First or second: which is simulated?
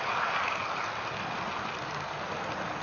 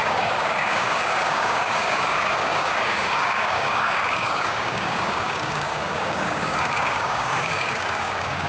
second